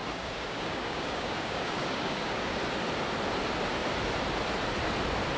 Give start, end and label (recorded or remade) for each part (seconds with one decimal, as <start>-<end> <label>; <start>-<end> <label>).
0.0-2.6 remade; 2.6-5.4 recorded

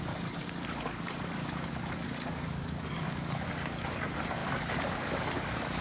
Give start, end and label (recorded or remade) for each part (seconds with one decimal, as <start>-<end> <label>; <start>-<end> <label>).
0.0-5.8 remade

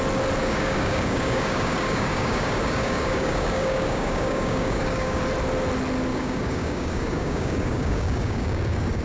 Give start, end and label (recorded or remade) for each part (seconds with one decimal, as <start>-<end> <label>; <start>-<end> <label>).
0.0-0.4 recorded; 0.4-5.2 remade; 5.2-6.1 recorded; 6.1-9.0 remade

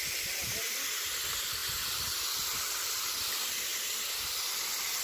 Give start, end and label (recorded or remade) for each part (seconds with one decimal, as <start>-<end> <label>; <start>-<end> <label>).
0.0-5.0 recorded

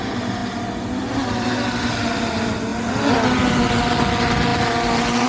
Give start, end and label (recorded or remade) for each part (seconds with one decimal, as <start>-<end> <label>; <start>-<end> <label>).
0.0-5.3 recorded

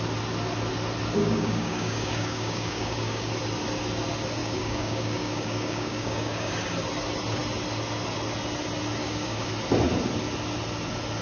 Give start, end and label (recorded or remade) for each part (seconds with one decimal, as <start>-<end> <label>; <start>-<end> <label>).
0.0-1.2 recorded; 1.2-3.3 remade; 3.3-4.4 recorded; 4.4-6.5 remade; 6.5-9.0 recorded; 9.0-9.5 remade; 9.5-11.2 recorded